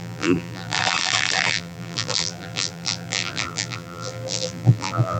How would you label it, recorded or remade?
remade